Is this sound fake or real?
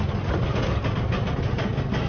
real